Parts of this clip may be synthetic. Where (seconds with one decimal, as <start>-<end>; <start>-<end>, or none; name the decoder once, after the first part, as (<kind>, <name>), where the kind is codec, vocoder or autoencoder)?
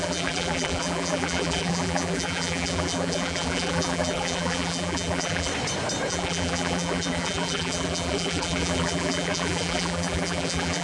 0.0-5.5 (vocoder, BigVGAN v2); 6.1-10.8